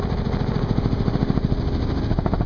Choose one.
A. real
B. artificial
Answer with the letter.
A